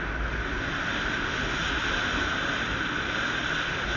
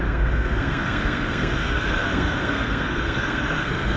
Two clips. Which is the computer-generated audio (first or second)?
second